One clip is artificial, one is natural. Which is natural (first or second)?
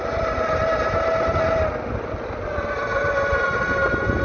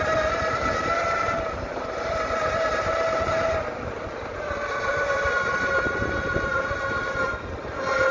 first